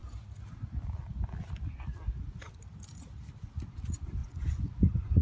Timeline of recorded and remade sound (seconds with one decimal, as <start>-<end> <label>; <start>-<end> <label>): 0.0-4.2 recorded; 4.2-5.2 remade